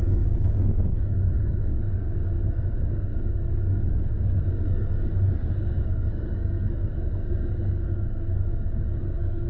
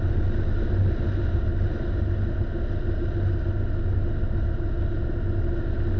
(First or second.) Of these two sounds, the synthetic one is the first